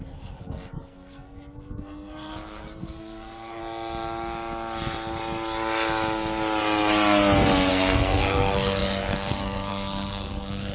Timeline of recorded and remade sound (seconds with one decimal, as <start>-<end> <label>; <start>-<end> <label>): 0.0-3.6 remade; 3.6-7.7 recorded; 7.7-10.7 remade